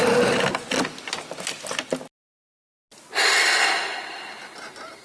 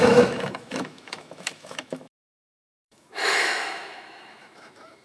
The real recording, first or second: first